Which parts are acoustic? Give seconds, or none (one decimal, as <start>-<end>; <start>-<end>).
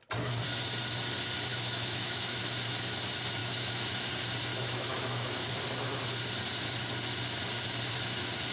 0.0-1.5; 2.4-3.4; 4.1-4.5; 5.5-8.5